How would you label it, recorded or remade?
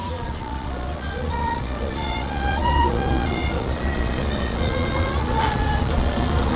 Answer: remade